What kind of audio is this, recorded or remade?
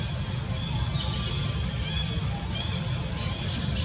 recorded